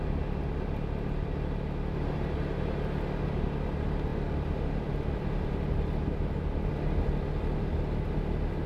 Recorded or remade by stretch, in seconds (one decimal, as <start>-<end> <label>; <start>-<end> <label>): 0.0-4.1 recorded; 4.1-7.6 remade; 7.6-8.7 recorded